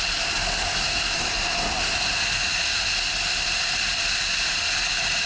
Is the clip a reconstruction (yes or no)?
no